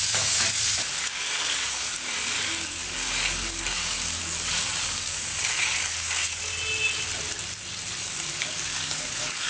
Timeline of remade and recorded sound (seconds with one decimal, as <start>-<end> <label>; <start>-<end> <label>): 0.0-6.5 remade; 6.5-8.0 recorded; 8.0-9.5 remade